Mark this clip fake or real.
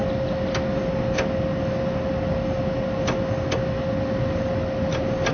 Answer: real